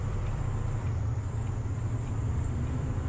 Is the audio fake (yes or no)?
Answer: yes